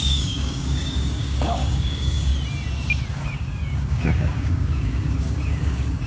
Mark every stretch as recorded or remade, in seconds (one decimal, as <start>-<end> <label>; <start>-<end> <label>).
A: 0.0-2.3 remade; 2.3-3.1 recorded; 3.1-6.1 remade